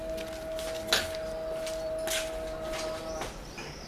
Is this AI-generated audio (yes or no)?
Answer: no